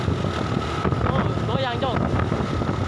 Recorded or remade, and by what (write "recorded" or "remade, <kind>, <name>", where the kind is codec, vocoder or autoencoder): recorded